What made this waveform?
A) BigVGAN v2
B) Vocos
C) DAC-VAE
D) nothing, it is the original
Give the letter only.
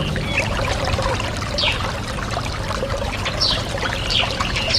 A